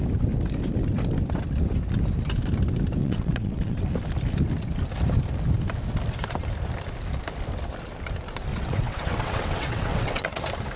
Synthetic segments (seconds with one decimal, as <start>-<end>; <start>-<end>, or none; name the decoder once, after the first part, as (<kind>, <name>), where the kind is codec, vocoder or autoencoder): 3.0-3.8 (vocoder, WaveNeXt); 8.5-10.4